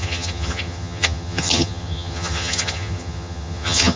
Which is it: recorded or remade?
remade